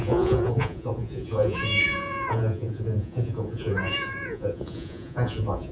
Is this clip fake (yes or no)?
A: yes